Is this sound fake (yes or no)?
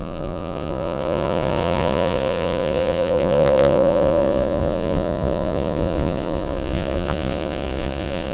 yes